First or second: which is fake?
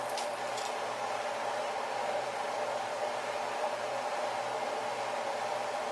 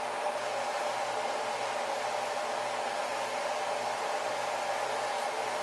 first